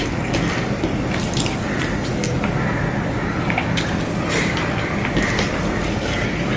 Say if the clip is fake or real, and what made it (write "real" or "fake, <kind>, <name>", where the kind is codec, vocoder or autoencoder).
real